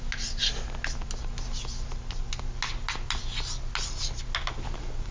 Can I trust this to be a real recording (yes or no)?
yes